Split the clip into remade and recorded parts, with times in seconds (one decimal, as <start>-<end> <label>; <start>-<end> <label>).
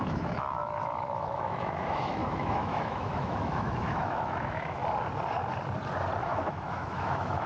0.0-4.8 remade; 4.8-6.2 recorded; 6.2-7.5 remade